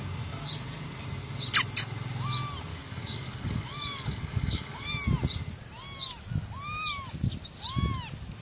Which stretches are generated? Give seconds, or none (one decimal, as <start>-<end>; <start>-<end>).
2.7-4.9

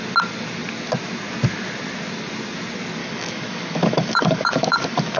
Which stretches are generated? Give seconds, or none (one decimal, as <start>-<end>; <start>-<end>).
3.0-5.2

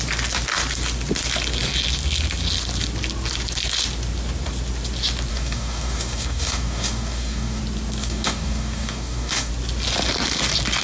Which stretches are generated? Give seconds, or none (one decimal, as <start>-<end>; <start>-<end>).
5.3-7.6; 8.0-9.5

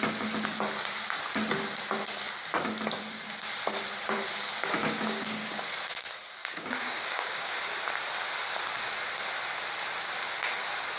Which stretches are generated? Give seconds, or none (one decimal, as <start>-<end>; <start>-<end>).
4.8-5.5; 6.4-7.6

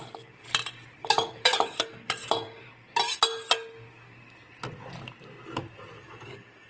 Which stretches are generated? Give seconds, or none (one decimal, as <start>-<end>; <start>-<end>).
0.0-0.4; 1.0-2.2; 6.0-6.7